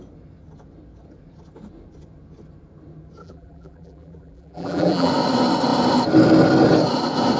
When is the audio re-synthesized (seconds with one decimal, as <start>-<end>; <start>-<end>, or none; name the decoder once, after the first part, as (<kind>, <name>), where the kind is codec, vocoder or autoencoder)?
3.2-5.1 (vocoder, BigVGAN v2)